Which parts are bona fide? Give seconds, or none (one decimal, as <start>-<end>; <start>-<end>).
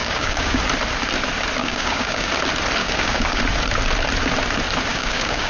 0.6-1.6; 2.3-2.8; 3.4-4.9